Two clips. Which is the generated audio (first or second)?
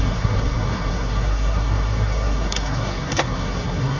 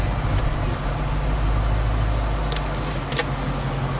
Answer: first